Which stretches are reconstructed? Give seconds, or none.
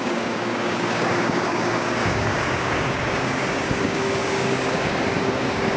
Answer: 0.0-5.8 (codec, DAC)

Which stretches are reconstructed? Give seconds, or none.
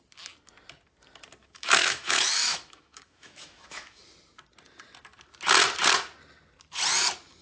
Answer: 1.4-4.0 (autoencoder, DAC-VAE)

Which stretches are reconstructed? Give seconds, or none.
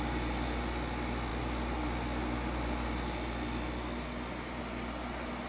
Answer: none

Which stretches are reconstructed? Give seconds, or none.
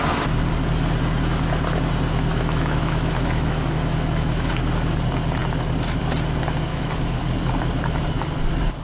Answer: 2.3-4.5 (autoencoder, DAC-VAE); 6.7-7.2